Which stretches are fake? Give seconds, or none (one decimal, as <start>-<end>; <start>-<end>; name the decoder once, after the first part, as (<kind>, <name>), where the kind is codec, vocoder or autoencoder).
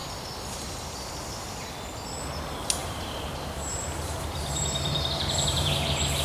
2.8-5.7 (vocoder, BigVGAN v2)